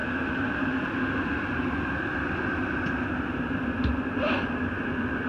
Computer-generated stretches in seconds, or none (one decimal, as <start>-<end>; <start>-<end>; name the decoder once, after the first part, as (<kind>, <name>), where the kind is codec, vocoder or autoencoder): 0.0-5.3 (vocoder, BigVGAN v2)